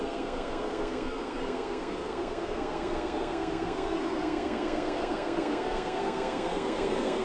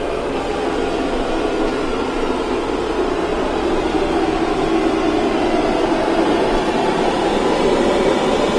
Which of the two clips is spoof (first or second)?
first